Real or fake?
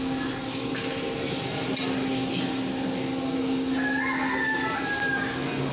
real